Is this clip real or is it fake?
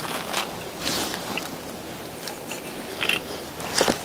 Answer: real